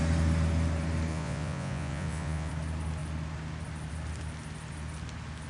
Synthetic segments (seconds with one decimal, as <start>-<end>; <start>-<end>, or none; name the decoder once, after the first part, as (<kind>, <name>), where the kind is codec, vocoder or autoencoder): 1.1-2.5 (vocoder, Vocos)